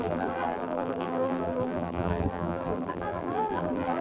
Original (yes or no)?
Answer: no